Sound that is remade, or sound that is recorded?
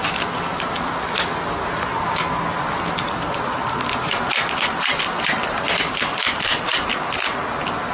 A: recorded